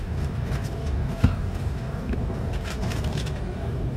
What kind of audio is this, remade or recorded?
remade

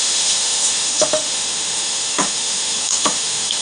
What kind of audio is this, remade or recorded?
remade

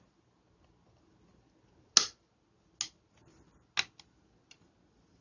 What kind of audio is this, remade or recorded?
recorded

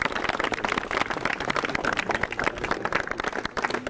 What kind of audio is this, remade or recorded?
recorded